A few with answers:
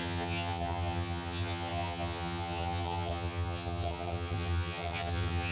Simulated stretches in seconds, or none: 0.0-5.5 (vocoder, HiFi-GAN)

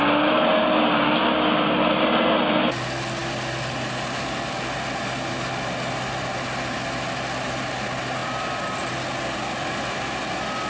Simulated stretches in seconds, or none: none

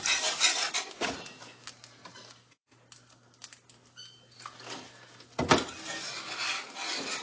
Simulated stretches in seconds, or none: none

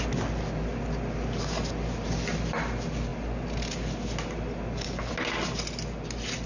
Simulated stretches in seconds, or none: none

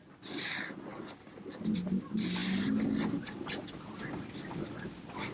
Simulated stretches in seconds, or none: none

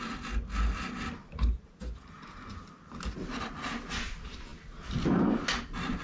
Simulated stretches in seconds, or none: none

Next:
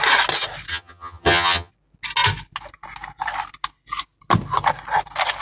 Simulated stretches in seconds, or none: 0.7-1.7 (vocoder, HiFi-GAN)